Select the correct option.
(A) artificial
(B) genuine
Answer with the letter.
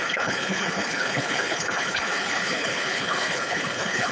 A